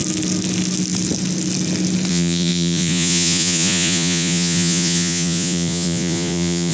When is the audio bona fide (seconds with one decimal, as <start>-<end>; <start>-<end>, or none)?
0.0-2.1